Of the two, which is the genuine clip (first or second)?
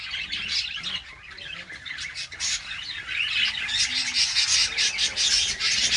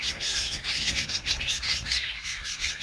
first